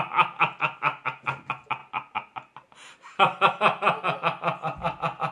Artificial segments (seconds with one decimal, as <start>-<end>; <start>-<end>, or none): none